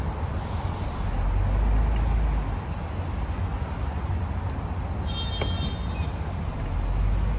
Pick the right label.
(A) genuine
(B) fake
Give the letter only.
A